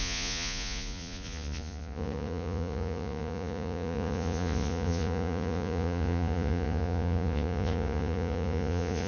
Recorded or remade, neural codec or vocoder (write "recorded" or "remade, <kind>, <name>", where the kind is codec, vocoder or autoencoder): remade, vocoder, Vocos